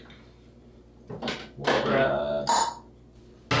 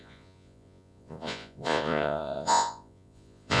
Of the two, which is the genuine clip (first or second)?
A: first